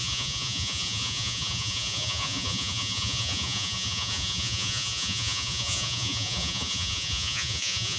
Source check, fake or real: fake